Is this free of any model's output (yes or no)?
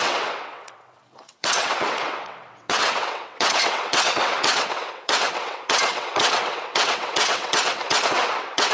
no